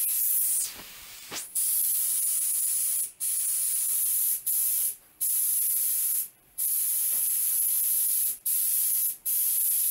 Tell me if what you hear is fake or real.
fake